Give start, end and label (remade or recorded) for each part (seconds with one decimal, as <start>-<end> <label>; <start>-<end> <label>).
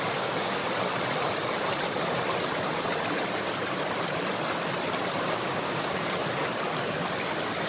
0.0-0.6 remade; 0.6-5.2 recorded; 5.2-6.2 remade; 6.2-7.7 recorded